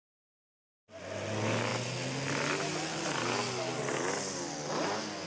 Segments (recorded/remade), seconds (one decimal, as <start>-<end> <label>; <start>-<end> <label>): 0.0-5.3 recorded